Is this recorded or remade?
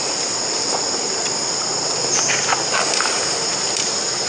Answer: recorded